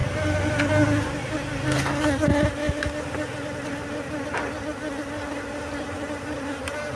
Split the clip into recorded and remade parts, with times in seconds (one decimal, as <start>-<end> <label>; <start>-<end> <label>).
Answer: 0.0-7.0 recorded